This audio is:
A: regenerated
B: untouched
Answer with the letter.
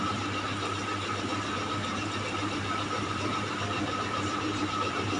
A